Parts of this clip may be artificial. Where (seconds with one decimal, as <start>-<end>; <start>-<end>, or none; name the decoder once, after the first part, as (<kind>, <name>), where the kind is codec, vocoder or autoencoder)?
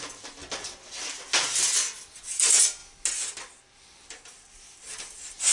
0.0-0.4 (vocoder, BigVGAN v2); 2.2-2.8; 3.6-5.5